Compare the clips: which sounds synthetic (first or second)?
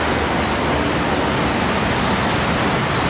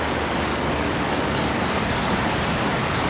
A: second